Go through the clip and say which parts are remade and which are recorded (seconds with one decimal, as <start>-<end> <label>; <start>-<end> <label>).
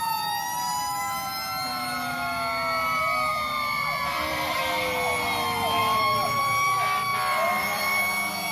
0.0-3.3 recorded; 3.3-4.6 remade; 4.6-5.8 recorded; 5.8-6.4 remade; 6.4-7.1 recorded; 7.1-8.0 remade; 8.0-8.5 recorded